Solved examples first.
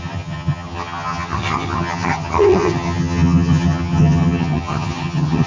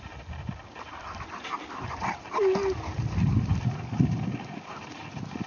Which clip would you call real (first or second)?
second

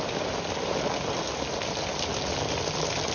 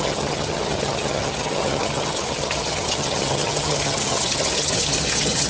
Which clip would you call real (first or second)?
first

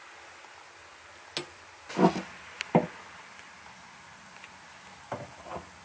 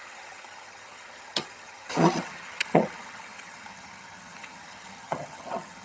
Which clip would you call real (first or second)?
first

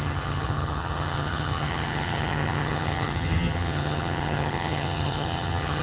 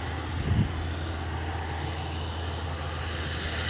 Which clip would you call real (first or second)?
second